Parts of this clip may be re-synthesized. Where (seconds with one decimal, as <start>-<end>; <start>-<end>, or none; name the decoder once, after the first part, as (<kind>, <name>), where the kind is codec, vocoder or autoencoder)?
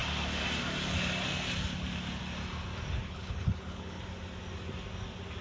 3.0-4.0 (codec, HILCodec)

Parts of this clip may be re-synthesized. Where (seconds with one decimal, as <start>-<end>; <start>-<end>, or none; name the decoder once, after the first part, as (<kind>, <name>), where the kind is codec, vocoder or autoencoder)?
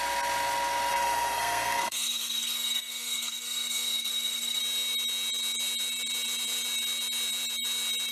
0.9-4.6 (codec, SNAC)